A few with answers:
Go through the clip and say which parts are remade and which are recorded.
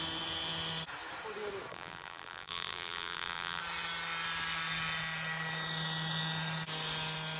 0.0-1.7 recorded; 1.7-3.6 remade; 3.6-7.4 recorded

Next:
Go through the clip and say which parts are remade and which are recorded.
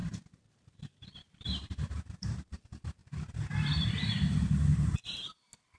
0.0-3.0 remade; 3.0-5.8 recorded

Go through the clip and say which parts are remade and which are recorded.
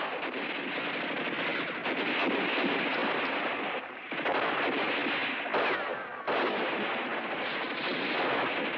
0.0-8.8 recorded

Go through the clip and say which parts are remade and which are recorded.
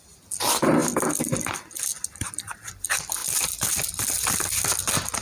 0.0-5.2 recorded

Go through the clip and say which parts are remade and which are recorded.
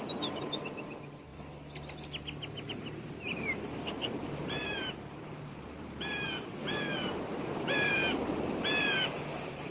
0.0-1.3 remade; 1.3-2.6 recorded; 2.6-9.7 remade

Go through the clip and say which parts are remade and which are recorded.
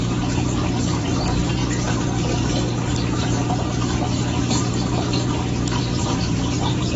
0.0-1.6 remade; 1.6-5.8 recorded; 5.8-7.0 remade